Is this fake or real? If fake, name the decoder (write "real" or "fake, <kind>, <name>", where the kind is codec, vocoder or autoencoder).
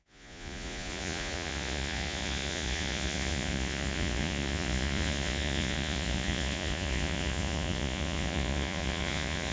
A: fake, vocoder, Vocos